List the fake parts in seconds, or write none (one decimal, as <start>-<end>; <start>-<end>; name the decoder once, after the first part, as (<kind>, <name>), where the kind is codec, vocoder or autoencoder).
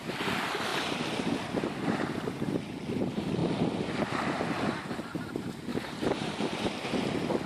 5.7-6.3 (vocoder, BigVGAN v2)